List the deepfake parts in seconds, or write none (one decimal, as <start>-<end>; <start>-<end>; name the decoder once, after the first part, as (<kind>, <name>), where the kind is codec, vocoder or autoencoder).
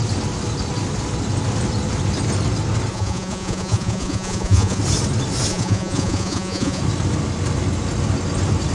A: 2.9-4.8 (vocoder, Vocos); 5.5-6.8